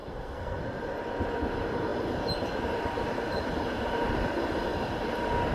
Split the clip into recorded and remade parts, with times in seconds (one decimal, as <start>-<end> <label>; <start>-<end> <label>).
0.0-0.6 remade; 0.6-5.5 recorded